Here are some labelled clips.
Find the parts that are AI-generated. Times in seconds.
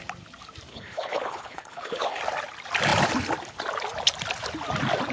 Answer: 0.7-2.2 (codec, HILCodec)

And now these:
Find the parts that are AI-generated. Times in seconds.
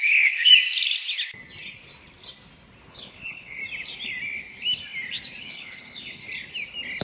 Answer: 0.0-0.5 (codec, HILCodec); 2.9-3.6; 5.4-6.2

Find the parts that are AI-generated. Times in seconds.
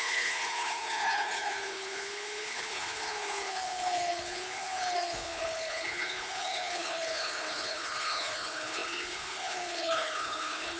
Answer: 0.0-10.8 (codec, HILCodec)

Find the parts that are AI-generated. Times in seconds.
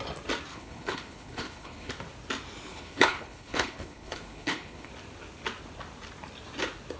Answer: 0.5-1.9 (codec, HILCodec); 2.7-4.9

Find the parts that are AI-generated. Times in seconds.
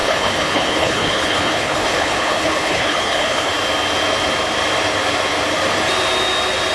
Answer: 0.0-3.5 (codec, HILCodec)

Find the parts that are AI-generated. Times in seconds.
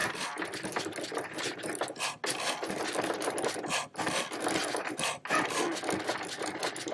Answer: none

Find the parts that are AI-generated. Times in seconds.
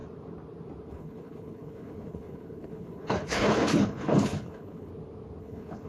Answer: 0.9-4.9 (codec, HILCodec); 5.4-5.9